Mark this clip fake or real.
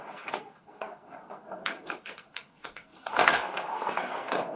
fake